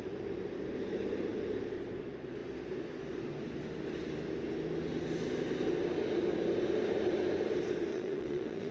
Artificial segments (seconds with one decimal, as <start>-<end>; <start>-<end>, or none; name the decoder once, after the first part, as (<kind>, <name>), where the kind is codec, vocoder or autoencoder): 7.9-8.7 (vocoder, Vocos)